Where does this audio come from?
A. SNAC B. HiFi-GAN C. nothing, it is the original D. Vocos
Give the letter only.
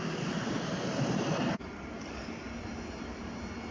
C